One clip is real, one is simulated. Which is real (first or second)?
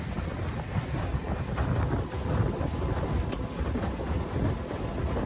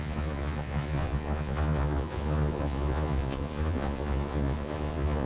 first